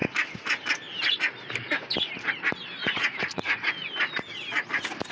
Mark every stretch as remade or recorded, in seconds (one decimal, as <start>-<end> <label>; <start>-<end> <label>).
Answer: 0.0-2.8 recorded; 2.8-3.7 remade; 3.7-5.1 recorded